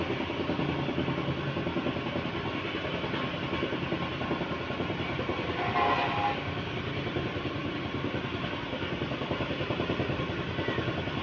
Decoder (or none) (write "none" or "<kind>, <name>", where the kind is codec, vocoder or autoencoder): none